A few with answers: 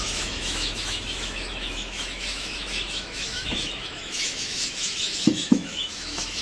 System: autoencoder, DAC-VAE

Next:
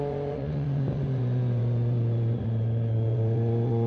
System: vocoder, Vocos